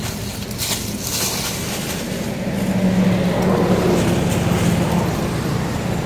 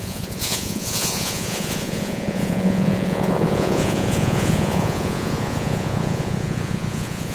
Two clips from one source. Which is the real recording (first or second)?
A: first